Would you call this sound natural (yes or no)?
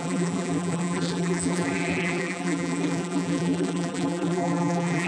no